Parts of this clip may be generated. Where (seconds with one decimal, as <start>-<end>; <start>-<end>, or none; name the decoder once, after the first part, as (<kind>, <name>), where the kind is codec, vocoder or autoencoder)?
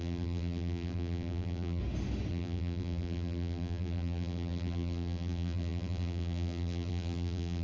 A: 0.0-1.8 (vocoder, BigVGAN v2); 2.3-7.6